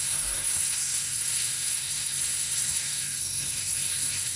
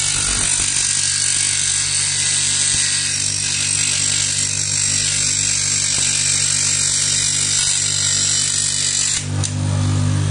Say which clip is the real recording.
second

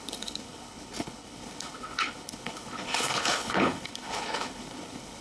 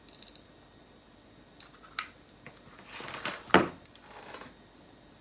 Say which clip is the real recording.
second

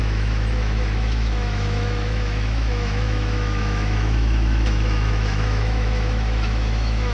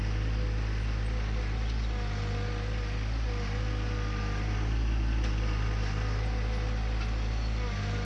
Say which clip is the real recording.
second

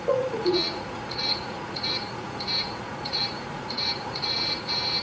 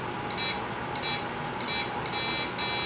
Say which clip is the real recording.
second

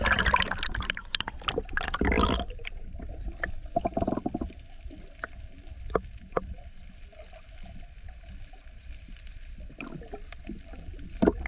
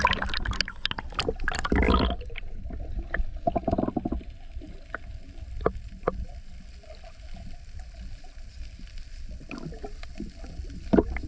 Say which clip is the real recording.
second